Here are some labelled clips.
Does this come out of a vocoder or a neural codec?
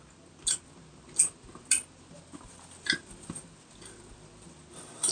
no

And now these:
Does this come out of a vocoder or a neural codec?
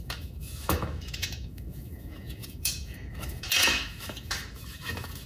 yes